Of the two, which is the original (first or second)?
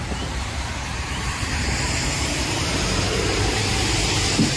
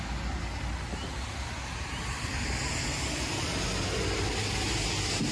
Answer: second